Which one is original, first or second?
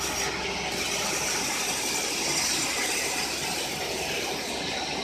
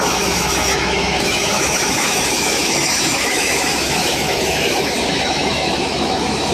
first